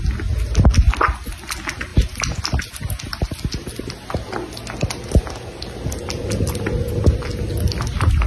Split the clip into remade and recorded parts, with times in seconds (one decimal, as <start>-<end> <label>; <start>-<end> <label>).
0.0-8.3 recorded